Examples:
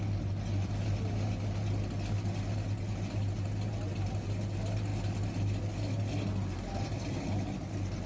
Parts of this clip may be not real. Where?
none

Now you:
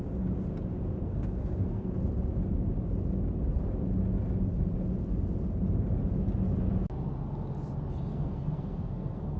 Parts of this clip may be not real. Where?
1.0-1.9; 8.1-9.4

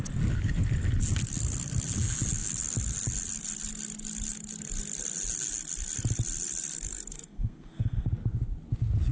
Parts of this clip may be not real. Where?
6.9-8.1